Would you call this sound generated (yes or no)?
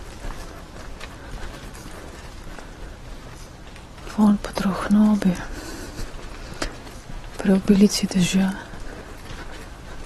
no